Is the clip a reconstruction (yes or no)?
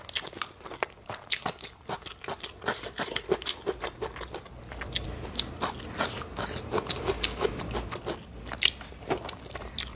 no